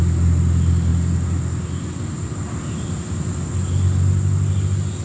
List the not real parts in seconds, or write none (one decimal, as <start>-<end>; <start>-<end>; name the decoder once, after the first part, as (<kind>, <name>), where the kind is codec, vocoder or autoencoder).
none